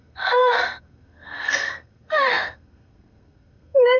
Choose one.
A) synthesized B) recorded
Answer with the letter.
A